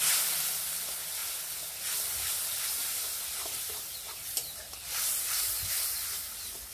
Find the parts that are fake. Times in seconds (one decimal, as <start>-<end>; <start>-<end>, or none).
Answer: none